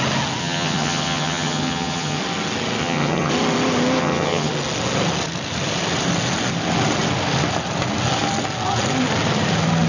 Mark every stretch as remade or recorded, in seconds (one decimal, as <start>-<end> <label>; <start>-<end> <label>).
0.0-0.4 recorded; 0.4-2.2 remade; 2.2-2.8 recorded; 2.8-3.3 remade; 3.3-4.0 recorded; 4.0-4.5 remade; 4.5-9.9 recorded